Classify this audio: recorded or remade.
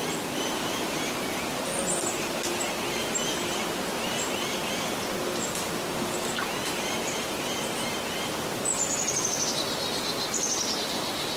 recorded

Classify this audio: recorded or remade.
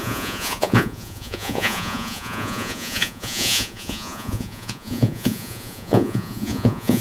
remade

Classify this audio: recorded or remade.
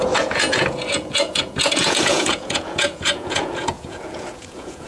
remade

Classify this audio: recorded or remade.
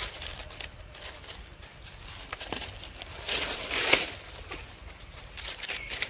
recorded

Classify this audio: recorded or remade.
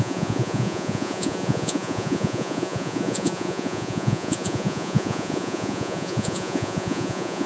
remade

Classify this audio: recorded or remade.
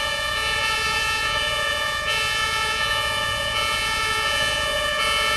remade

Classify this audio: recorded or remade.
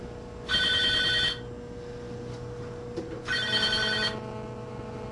recorded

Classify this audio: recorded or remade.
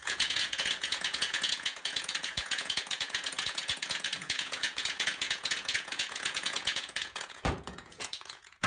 remade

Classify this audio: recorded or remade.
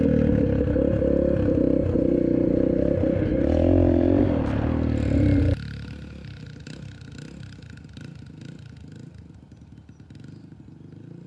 recorded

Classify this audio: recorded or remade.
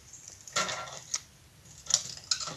recorded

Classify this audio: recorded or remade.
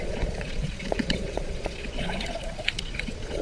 remade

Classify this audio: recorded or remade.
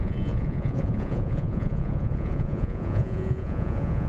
remade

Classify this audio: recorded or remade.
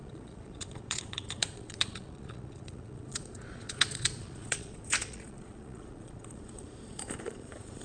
remade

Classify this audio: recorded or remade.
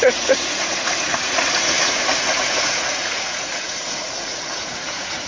remade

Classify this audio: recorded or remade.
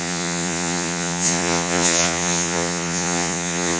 remade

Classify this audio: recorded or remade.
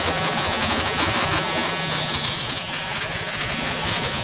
remade